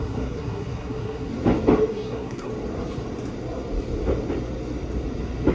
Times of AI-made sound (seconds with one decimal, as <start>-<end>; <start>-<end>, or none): 0.0-1.3; 1.9-2.5